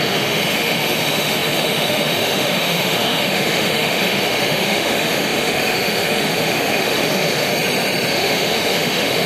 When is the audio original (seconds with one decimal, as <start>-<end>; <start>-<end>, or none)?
7.5-8.1